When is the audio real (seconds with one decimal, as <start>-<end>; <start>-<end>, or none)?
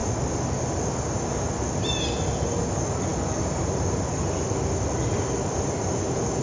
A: 0.0-6.4